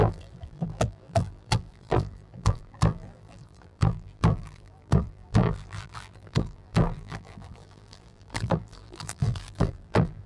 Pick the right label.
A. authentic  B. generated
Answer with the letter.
B